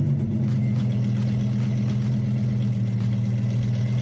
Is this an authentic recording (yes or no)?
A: yes